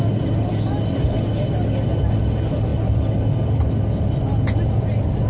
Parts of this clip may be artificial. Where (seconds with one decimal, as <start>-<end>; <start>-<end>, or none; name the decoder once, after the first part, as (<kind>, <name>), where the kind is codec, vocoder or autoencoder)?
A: none